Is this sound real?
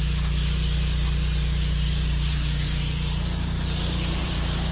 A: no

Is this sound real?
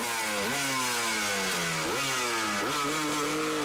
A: yes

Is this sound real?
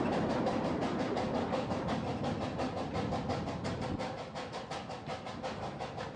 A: yes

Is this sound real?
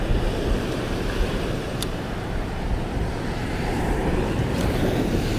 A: no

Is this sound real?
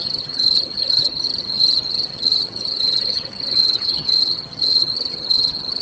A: no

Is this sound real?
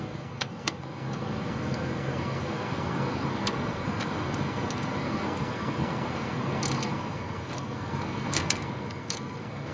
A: no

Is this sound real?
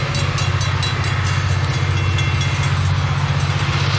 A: yes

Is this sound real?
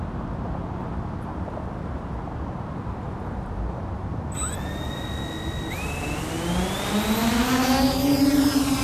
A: yes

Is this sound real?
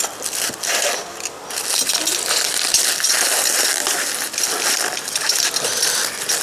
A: yes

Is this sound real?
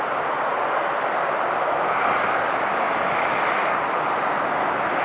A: yes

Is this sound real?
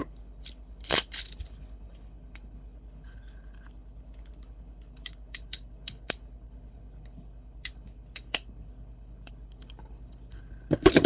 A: no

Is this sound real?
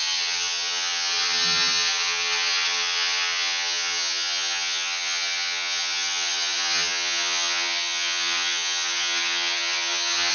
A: no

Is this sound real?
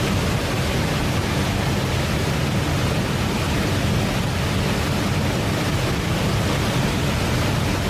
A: yes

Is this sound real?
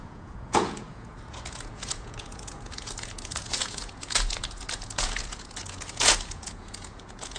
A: no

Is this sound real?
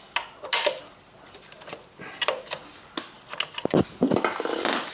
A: yes